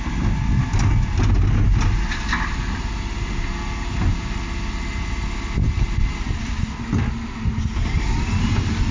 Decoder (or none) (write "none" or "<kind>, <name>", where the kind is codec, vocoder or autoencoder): none